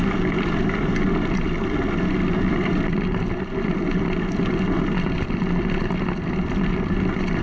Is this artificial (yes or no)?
no